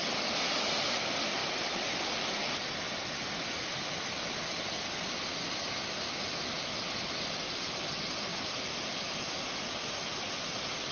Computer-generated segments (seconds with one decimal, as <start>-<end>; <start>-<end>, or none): 1.4-2.8; 8.3-9.6